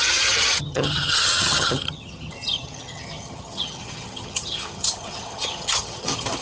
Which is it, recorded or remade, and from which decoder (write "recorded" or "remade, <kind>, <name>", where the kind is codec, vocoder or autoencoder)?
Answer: remade, vocoder, HiFi-GAN